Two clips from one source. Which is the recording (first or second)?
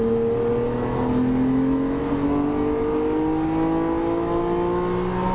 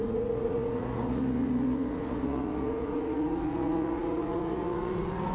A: first